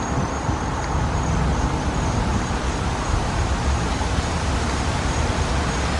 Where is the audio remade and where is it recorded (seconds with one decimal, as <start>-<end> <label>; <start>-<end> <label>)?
0.0-2.3 recorded; 2.3-5.3 remade; 5.3-6.0 recorded